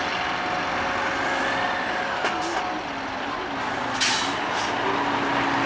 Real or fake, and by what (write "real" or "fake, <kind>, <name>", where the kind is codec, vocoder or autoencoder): real